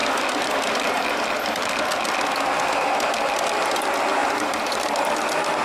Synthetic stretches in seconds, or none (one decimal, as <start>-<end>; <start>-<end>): 4.2-5.1